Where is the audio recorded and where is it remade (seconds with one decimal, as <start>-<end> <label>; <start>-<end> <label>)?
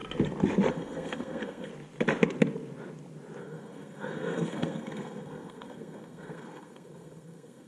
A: 0.0-0.7 recorded; 0.7-1.7 remade; 1.7-3.4 recorded; 3.4-7.7 remade